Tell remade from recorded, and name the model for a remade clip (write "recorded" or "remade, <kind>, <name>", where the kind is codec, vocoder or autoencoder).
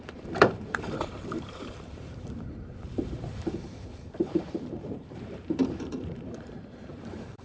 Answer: remade, vocoder, BigVGAN v2